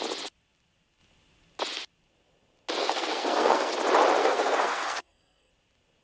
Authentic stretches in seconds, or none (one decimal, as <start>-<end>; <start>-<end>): 0.0-2.8; 3.7-4.2; 5.5-6.0